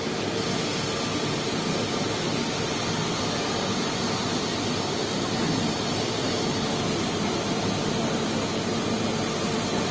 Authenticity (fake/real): real